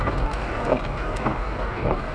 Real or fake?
fake